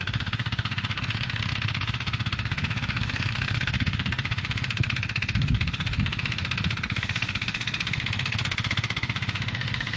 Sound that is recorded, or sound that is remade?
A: remade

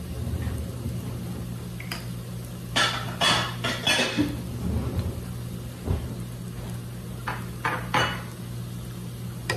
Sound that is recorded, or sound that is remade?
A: recorded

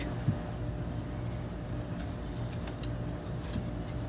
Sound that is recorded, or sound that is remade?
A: recorded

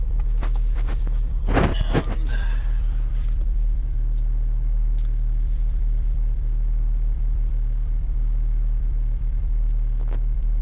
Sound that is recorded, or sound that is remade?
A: remade